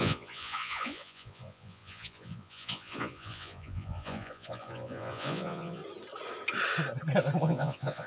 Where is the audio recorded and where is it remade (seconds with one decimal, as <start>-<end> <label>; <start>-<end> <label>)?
0.0-5.8 remade; 5.8-7.4 recorded; 7.4-8.1 remade